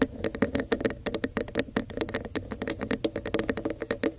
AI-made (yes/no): no